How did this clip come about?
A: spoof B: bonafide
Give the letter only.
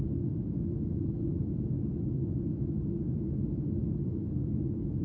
A